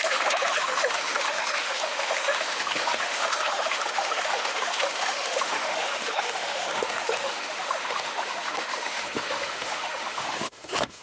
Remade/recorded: remade